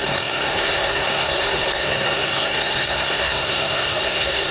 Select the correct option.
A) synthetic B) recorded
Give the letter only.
A